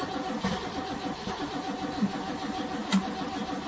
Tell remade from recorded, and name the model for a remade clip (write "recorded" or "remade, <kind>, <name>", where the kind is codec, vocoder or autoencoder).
remade, vocoder, BigVGAN v2